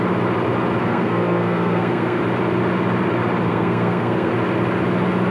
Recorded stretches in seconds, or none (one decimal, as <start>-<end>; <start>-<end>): 0.0-0.8; 2.2-3.5; 4.3-5.3